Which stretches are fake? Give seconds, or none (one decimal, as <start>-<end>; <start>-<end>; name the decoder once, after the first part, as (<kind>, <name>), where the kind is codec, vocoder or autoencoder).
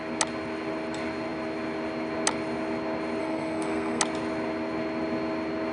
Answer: 3.2-4.0 (codec, SNAC)